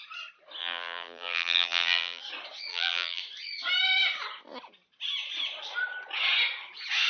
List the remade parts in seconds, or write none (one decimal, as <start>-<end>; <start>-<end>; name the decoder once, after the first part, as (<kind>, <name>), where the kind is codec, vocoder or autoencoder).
0.6-2.2 (vocoder, BigVGAN v2); 2.7-3.2